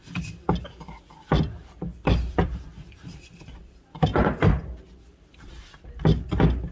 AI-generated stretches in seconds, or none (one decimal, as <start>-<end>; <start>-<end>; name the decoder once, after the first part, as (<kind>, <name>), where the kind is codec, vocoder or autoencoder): none